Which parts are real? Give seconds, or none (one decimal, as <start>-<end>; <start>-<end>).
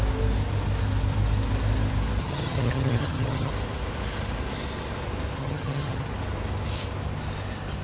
0.0-2.2; 3.5-5.4; 6.1-7.8